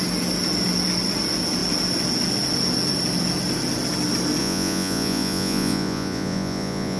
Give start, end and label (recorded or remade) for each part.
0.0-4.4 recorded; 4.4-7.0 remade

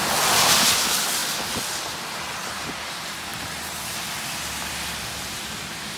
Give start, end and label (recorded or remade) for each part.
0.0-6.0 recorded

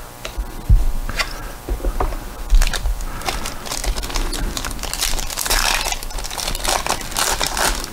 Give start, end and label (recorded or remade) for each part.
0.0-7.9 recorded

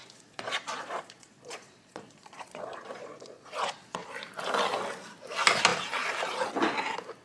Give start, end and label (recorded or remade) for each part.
0.0-4.1 remade; 4.1-7.2 recorded

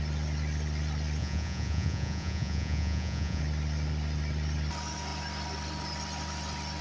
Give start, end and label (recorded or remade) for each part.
0.0-1.2 recorded; 1.2-3.4 remade; 3.4-6.8 recorded